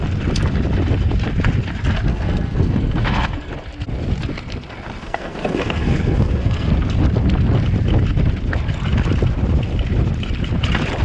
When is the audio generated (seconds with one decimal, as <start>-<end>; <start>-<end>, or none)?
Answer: 2.1-3.5; 5.0-6.7